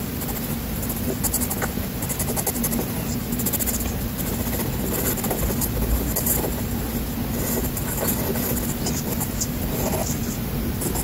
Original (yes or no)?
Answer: yes